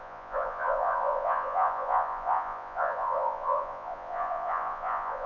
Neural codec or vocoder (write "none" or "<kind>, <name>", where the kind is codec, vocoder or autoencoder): vocoder, Vocos